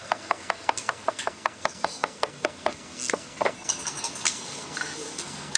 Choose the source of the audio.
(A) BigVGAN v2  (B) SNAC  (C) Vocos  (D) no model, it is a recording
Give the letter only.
B